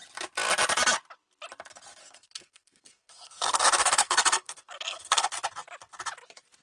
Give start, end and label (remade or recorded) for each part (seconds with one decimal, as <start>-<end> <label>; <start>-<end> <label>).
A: 0.0-2.0 recorded; 2.0-5.3 remade; 5.3-6.6 recorded

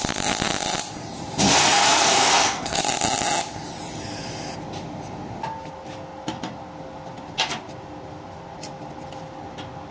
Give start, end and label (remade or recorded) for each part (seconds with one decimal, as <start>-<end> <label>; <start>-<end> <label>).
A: 0.0-1.6 recorded; 1.6-2.8 remade; 2.8-9.9 recorded

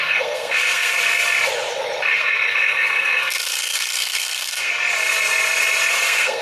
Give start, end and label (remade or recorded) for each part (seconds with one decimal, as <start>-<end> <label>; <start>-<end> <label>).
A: 0.0-1.0 remade; 1.0-2.1 recorded; 2.1-4.7 remade; 4.7-5.9 recorded; 5.9-6.4 remade

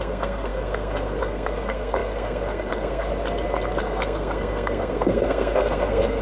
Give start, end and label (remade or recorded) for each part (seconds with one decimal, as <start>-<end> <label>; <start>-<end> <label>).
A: 0.0-3.1 remade; 3.1-3.8 recorded; 3.8-6.2 remade

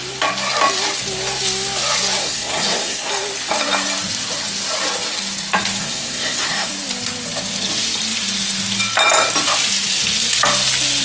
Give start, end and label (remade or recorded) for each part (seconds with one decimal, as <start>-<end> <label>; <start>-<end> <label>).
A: 0.0-2.2 recorded; 2.2-3.1 remade; 3.1-5.8 recorded; 5.8-6.7 remade; 6.7-11.0 recorded

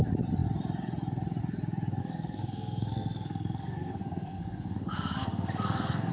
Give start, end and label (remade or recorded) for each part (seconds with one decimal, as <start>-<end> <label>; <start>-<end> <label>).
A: 0.0-2.0 recorded; 2.0-6.1 remade

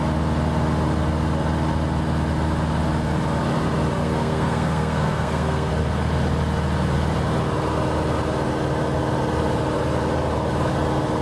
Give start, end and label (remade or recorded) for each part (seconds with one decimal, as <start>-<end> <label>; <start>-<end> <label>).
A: 0.0-4.0 recorded; 4.0-5.7 remade; 5.7-11.2 recorded